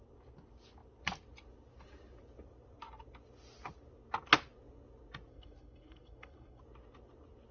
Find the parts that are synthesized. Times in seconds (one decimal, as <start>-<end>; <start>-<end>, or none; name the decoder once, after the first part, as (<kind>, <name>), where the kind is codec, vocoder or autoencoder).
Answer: 5.3-6.6 (codec, SNAC)